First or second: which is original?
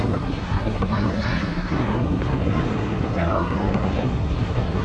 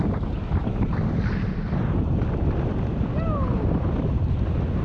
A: second